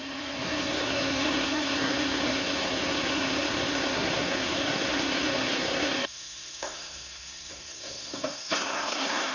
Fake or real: fake